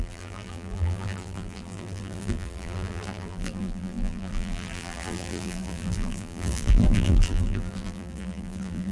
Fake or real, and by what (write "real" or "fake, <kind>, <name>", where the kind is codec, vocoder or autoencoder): fake, vocoder, BigVGAN v2